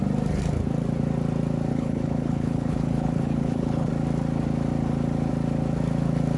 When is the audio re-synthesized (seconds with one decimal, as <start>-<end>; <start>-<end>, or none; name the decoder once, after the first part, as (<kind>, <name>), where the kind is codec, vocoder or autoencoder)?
1.7-3.9 (codec, HILCodec)